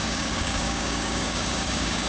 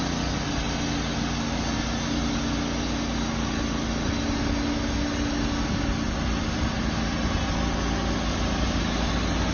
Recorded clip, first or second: second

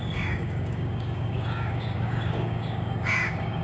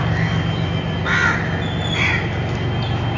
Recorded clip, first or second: second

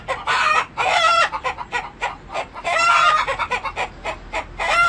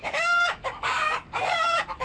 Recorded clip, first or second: first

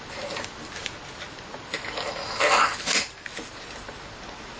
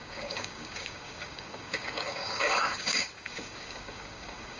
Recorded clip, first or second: first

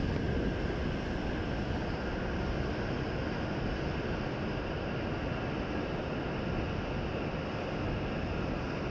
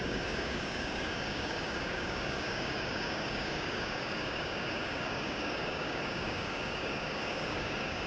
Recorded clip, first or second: first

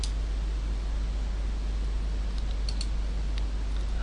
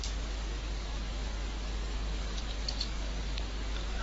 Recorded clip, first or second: first